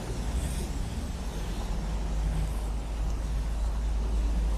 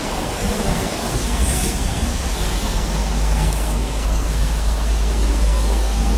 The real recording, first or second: first